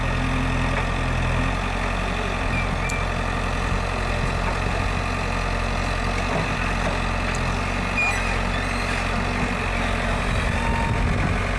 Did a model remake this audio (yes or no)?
no